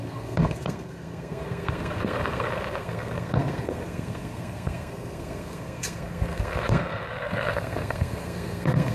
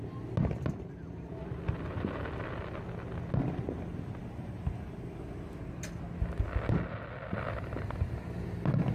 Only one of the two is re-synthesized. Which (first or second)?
first